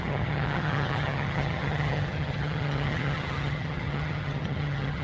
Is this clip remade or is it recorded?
remade